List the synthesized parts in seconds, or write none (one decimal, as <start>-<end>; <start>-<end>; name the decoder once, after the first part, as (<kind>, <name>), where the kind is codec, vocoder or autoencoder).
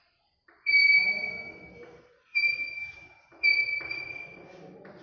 none